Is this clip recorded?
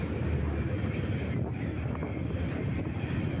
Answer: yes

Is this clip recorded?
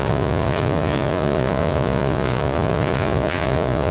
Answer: no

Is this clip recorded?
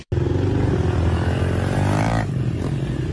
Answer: yes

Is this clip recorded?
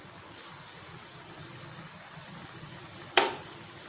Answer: no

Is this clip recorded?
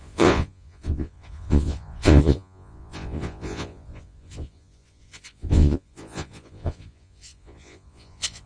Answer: no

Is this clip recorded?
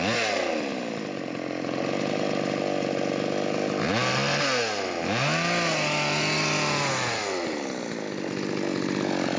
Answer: yes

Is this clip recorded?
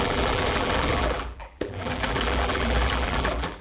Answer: no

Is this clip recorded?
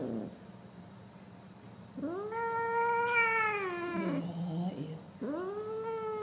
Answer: yes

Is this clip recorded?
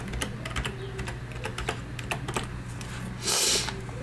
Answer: yes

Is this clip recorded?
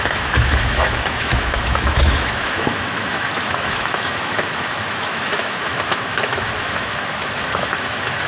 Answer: no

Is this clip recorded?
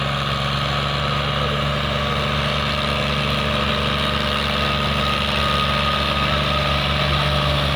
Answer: yes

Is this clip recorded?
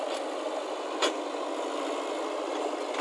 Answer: yes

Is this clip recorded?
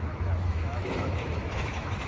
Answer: no